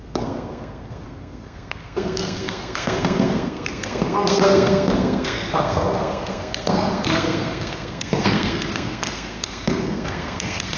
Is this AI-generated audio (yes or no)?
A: yes